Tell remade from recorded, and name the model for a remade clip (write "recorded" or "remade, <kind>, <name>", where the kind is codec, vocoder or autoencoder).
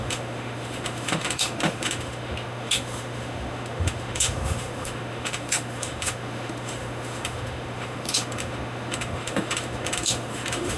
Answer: remade, autoencoder, DAC-VAE